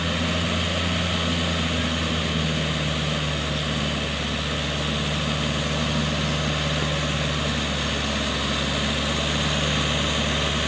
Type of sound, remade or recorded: recorded